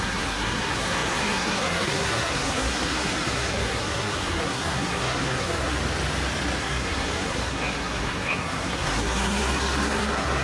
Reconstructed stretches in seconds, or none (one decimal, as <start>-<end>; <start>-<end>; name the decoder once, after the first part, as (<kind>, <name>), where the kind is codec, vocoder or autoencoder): 0.0-5.8 (codec, SNAC); 6.6-10.4